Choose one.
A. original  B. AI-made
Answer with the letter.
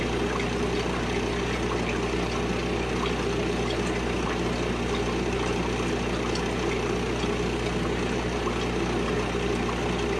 A